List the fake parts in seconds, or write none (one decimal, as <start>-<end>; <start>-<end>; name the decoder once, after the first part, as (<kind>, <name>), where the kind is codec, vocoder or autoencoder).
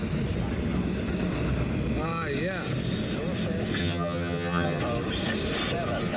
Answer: 3.8-4.8 (vocoder, HiFi-GAN)